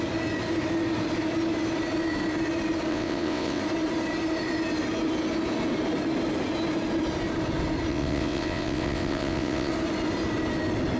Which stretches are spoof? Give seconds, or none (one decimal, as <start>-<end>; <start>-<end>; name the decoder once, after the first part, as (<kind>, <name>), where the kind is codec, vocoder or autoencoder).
2.9-3.6 (vocoder, WaveNeXt); 7.9-9.7